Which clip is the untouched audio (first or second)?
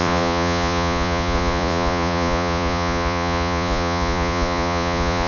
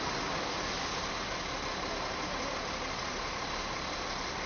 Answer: second